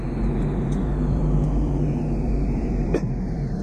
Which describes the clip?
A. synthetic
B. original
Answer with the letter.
A